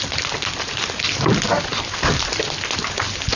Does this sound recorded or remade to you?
recorded